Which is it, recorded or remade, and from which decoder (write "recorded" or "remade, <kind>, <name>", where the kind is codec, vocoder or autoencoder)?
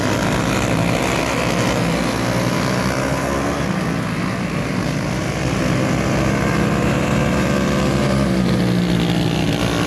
recorded